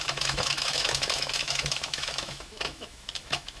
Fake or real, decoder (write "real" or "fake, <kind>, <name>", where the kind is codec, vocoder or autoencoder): fake, autoencoder, DAC-VAE